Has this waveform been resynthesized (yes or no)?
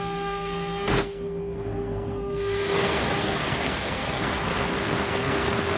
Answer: yes